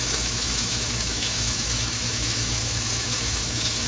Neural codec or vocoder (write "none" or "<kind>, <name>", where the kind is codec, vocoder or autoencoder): autoencoder, DAC-VAE